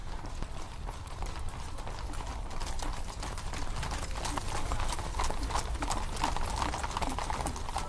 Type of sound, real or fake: real